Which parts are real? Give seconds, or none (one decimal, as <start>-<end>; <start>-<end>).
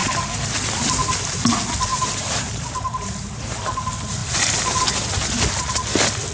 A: 0.0-1.9; 3.6-6.3